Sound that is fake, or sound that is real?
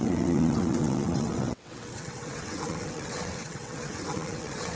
fake